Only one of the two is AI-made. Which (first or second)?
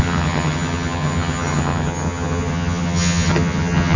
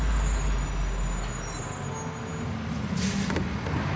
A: first